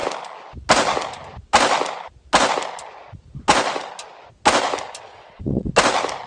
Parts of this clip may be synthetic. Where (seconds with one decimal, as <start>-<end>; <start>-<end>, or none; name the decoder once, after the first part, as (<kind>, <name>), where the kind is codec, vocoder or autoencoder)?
5.1-5.7 (vocoder, WaveNeXt)